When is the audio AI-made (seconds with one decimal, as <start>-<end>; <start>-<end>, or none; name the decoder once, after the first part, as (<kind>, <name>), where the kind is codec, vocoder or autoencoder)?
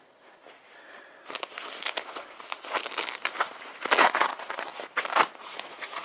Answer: 0.0-0.4 (vocoder, Vocos); 4.0-4.7; 5.3-6.0